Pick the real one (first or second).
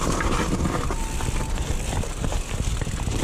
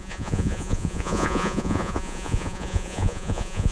first